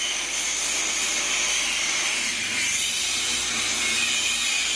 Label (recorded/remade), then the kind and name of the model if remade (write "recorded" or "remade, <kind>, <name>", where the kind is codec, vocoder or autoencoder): recorded